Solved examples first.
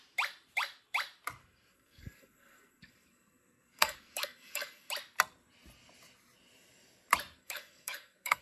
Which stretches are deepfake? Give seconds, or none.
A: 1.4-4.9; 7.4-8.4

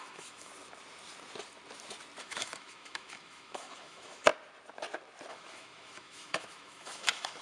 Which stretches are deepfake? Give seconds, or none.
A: 0.0-0.5; 2.2-4.3; 5.3-7.4

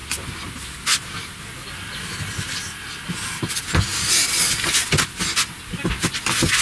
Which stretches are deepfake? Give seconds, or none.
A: none

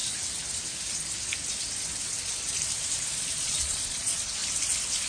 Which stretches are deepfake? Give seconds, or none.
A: 3.1-4.4

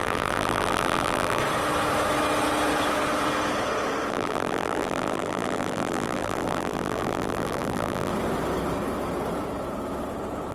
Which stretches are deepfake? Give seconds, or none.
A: 0.0-1.4; 4.1-8.1